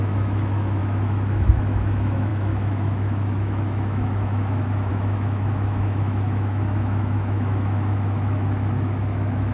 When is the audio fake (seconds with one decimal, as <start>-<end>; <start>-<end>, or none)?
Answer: 0.0-9.5